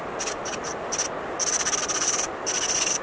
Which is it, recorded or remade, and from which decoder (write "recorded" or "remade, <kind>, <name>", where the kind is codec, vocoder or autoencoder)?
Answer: recorded